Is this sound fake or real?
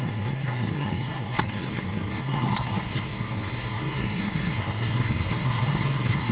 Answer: fake